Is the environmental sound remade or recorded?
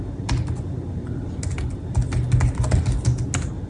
recorded